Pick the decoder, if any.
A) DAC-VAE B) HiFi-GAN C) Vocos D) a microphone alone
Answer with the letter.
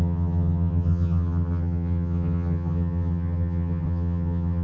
B